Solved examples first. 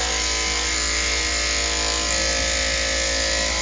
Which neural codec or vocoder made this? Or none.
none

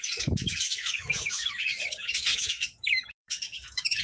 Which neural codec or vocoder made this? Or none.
autoencoder, DAC-VAE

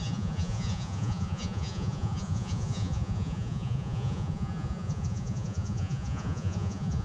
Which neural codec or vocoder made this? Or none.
vocoder, Vocos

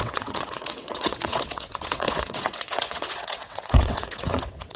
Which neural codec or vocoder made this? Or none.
vocoder, WaveNeXt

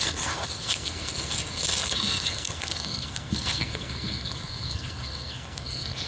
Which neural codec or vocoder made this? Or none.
codec, SNAC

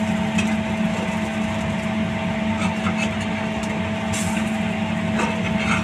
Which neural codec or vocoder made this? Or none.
none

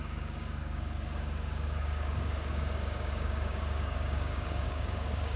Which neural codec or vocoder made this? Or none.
codec, DAC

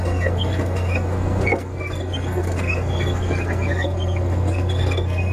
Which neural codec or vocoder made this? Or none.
codec, SNAC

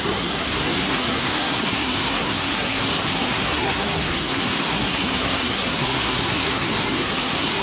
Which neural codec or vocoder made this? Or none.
codec, SNAC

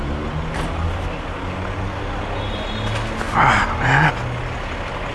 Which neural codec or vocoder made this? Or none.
none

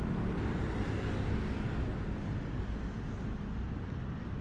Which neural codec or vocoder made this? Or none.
none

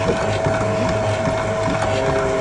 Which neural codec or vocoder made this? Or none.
none